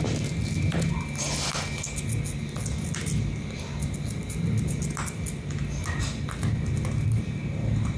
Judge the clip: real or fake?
real